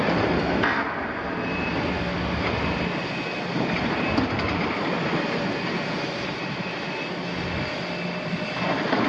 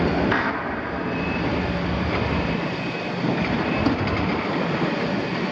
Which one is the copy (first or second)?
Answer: second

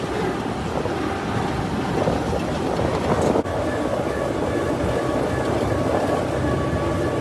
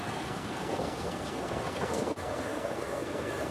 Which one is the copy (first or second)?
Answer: second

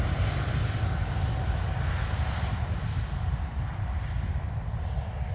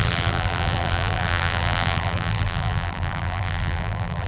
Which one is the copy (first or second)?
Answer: second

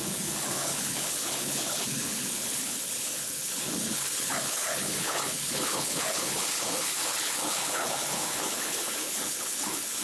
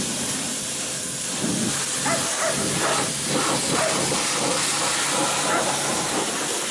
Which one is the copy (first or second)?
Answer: first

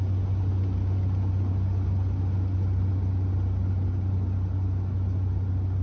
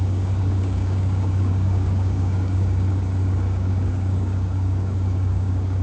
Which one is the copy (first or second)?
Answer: second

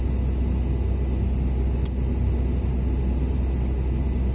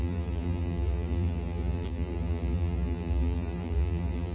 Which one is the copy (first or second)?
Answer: second